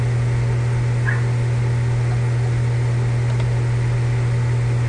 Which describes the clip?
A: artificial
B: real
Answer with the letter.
B